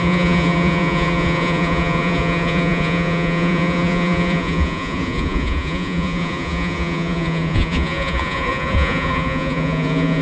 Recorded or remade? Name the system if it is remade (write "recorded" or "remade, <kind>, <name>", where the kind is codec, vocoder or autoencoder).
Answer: remade, vocoder, Vocos